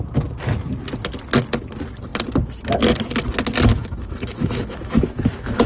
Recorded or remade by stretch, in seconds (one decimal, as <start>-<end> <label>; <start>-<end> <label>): 0.0-3.7 recorded; 3.7-5.7 remade